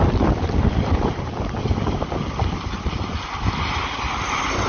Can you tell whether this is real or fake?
real